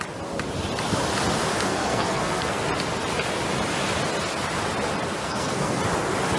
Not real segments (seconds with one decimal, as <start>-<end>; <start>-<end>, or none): 1.5-2.6; 5.2-5.8